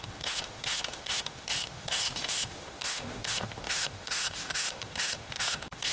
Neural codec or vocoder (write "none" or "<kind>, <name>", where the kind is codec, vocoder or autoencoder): autoencoder, DAC-VAE